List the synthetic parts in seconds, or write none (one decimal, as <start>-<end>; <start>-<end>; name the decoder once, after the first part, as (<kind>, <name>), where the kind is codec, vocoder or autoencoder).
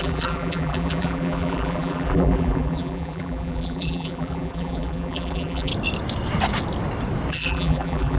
0.0-5.7 (vocoder, BigVGAN v2); 7.3-8.2